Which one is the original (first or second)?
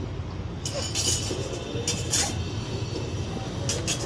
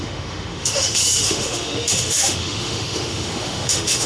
first